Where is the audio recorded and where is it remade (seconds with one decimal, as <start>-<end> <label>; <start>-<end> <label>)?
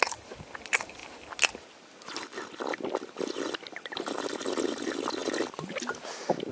0.0-6.5 recorded